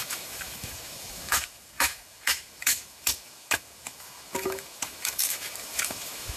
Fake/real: fake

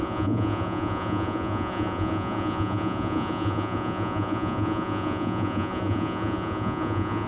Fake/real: fake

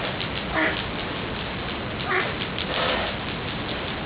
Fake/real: real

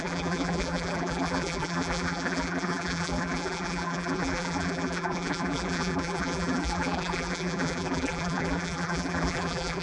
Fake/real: fake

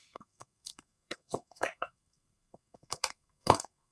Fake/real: fake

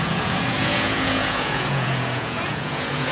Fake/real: fake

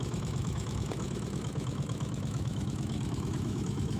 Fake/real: fake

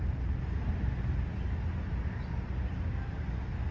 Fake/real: real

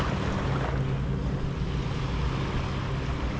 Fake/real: real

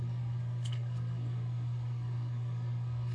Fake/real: fake